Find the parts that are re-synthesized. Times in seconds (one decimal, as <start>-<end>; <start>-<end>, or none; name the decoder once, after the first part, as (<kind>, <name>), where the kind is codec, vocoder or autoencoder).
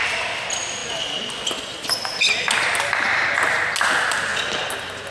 none